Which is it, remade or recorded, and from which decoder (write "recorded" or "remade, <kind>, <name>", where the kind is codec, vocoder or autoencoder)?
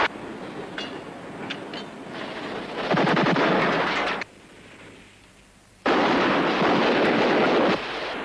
recorded